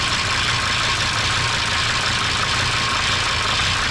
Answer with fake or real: real